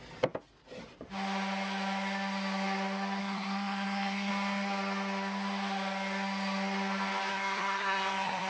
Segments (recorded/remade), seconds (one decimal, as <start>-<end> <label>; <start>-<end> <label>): 0.0-3.2 recorded; 3.2-4.3 remade; 4.3-7.3 recorded; 7.3-8.5 remade